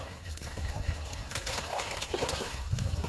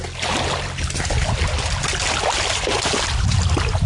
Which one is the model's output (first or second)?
first